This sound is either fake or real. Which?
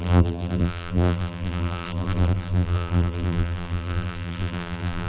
fake